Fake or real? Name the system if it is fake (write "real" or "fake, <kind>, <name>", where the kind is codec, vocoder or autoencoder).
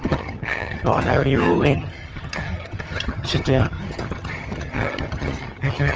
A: fake, vocoder, HiFi-GAN